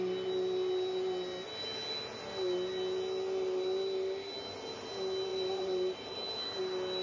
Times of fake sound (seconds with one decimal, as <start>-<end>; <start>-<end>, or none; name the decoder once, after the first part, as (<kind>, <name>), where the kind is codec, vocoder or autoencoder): 5.3-6.6 (vocoder, BigVGAN v2)